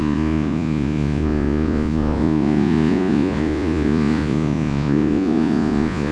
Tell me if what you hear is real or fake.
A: fake